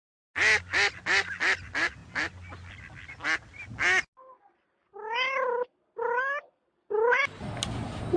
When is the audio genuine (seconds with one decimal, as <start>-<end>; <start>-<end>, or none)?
0.0-8.2